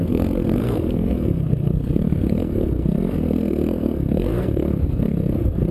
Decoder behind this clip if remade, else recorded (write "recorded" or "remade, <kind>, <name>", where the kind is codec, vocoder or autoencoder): remade, codec, SNAC